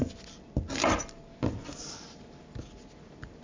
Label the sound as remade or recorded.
recorded